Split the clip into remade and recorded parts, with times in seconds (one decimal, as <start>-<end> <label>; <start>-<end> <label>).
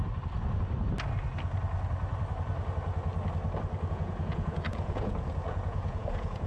0.0-3.9 recorded; 3.9-6.5 remade